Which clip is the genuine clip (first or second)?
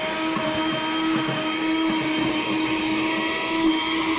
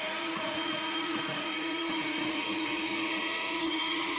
first